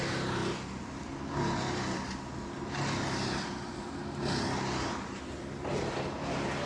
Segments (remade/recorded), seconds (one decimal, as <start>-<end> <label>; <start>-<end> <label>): 0.0-6.7 recorded